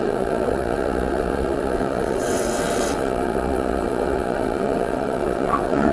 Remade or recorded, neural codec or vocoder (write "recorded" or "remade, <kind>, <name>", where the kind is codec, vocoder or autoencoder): remade, vocoder, WaveNeXt